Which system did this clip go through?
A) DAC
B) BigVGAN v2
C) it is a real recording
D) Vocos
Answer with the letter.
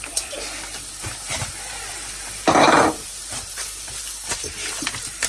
B